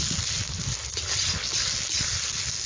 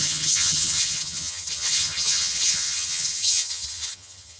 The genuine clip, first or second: first